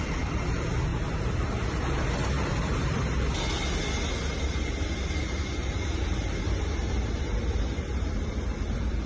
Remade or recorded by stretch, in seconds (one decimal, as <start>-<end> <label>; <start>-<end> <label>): 0.0-3.0 remade; 3.0-5.2 recorded; 5.2-9.1 remade